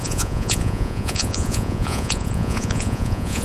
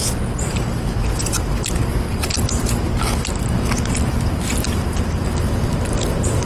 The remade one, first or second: first